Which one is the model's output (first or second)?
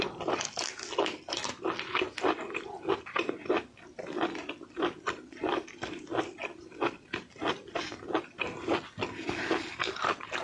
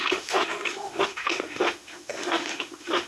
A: second